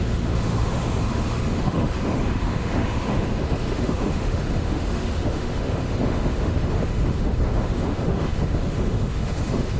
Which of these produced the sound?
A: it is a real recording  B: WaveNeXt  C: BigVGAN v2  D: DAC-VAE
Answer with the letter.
D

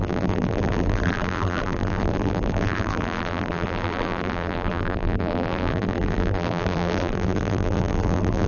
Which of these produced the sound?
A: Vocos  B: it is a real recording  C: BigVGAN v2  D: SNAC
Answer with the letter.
C